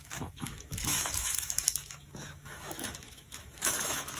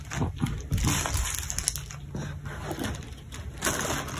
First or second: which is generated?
first